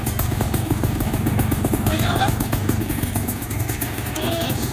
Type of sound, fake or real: fake